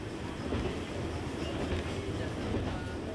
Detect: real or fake real